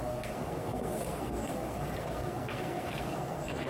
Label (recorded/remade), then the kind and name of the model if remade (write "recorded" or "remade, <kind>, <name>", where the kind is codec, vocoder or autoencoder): remade, codec, SNAC